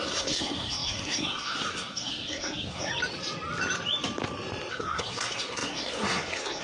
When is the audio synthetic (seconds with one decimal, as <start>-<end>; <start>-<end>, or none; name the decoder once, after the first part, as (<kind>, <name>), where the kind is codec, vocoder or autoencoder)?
0.0-2.9 (codec, SNAC); 4.7-6.6